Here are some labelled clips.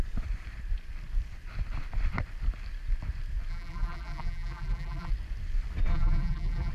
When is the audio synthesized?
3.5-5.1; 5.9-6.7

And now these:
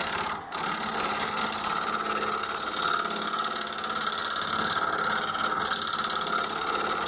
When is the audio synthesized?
0.0-1.4